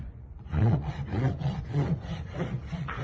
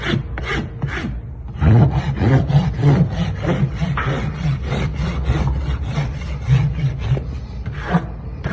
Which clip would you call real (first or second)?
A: second